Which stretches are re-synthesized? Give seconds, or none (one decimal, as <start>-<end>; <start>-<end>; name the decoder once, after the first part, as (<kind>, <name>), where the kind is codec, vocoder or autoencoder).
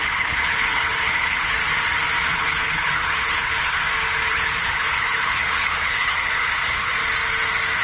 0.0-1.6 (codec, HILCodec); 2.3-3.8; 4.3-6.9